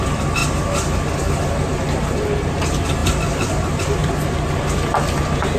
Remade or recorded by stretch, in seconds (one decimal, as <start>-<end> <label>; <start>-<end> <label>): 0.0-3.0 recorded; 3.0-3.5 remade; 3.5-4.0 recorded; 4.0-4.6 remade; 4.6-5.6 recorded